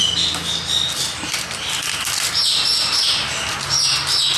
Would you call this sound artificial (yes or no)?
no